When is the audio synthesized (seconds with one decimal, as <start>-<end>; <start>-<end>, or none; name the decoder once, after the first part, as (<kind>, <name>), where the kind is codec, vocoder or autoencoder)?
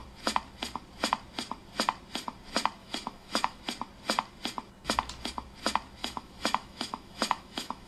2.8-3.6 (autoencoder, DAC-VAE); 6.0-7.9